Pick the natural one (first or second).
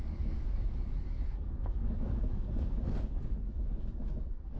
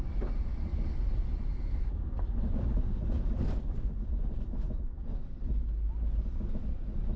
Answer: second